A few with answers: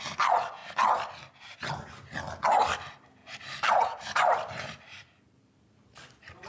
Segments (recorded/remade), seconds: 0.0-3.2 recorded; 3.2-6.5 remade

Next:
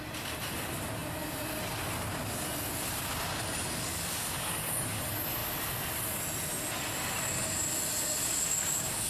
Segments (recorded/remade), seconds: 0.0-3.9 recorded; 3.9-5.0 remade; 5.0-8.2 recorded; 8.2-9.1 remade

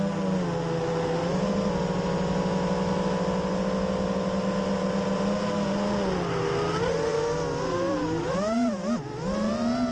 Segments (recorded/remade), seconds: 0.0-9.9 recorded

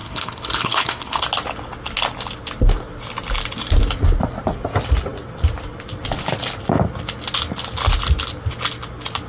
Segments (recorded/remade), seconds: 0.0-1.2 remade; 1.2-9.3 recorded

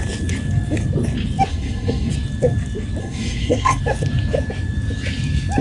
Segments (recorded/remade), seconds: 0.0-1.5 recorded; 1.5-2.1 remade; 2.1-3.0 recorded; 3.0-3.8 remade; 3.8-5.6 recorded

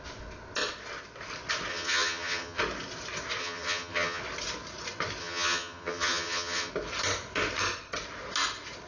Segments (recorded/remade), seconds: 0.0-1.7 recorded; 1.7-2.6 remade; 2.6-3.4 recorded; 3.4-4.2 remade; 4.2-5.2 recorded; 5.2-6.7 remade; 6.7-8.9 recorded